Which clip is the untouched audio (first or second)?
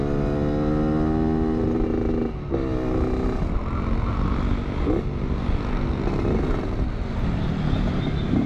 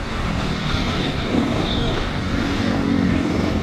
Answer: first